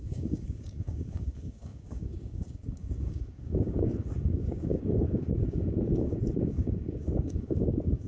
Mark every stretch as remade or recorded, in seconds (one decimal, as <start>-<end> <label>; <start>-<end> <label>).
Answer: 0.0-8.1 remade